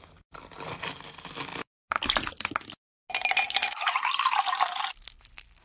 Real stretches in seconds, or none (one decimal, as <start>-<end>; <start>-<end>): 0.0-5.6